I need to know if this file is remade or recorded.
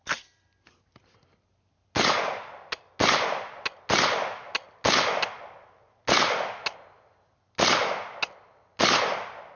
recorded